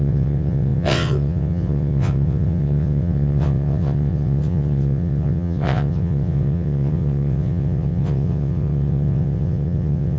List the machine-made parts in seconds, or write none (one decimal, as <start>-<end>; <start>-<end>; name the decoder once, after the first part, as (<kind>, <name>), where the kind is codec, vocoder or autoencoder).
0.0-10.2 (vocoder, WaveNeXt)